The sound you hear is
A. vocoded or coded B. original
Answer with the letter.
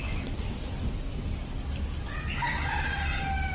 B